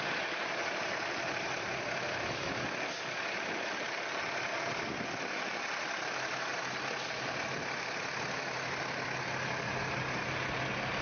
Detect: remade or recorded recorded